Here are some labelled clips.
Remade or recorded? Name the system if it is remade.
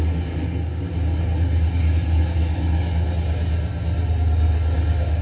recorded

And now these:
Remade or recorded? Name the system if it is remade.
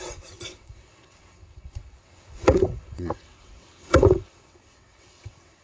remade, vocoder, WaveNeXt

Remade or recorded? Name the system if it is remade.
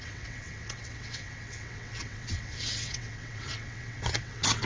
remade, vocoder, WaveNeXt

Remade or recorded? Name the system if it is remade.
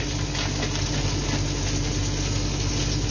recorded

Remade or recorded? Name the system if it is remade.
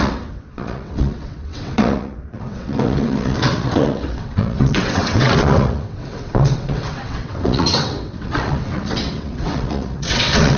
remade, vocoder, WaveNeXt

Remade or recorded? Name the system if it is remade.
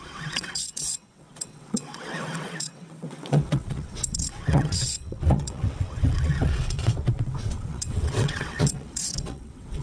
remade, vocoder, WaveNeXt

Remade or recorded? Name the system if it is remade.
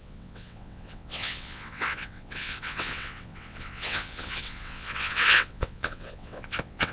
remade, vocoder, WaveNeXt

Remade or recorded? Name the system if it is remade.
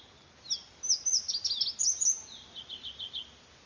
recorded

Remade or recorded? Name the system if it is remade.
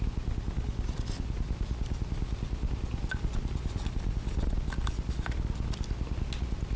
recorded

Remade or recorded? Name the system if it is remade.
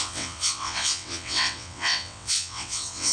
remade, vocoder, WaveNeXt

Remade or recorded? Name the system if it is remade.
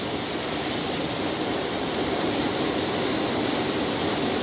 recorded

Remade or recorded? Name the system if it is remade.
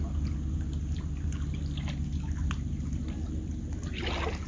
recorded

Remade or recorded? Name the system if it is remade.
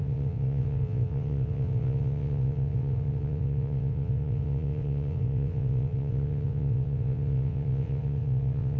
remade, vocoder, WaveNeXt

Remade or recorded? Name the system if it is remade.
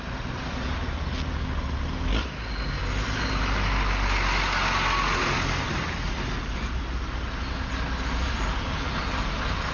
recorded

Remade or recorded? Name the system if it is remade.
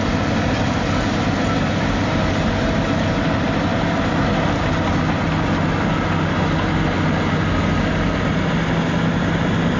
recorded